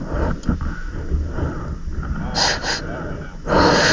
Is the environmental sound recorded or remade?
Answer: recorded